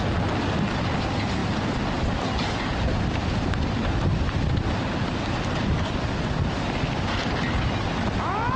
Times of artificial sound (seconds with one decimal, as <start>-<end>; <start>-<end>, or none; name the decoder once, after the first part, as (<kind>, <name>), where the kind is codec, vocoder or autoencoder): none